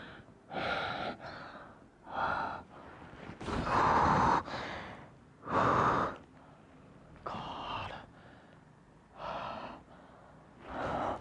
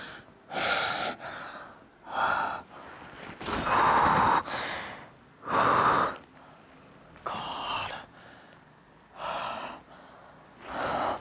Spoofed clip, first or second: first